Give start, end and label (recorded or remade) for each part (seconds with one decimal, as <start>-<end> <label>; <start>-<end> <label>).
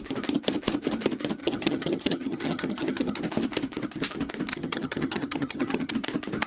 0.0-1.4 recorded; 1.4-3.2 remade; 3.2-4.5 recorded; 4.5-5.9 remade; 5.9-6.5 recorded